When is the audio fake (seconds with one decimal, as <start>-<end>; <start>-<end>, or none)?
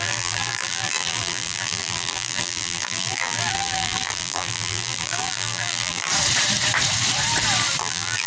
0.0-6.1; 7.8-8.3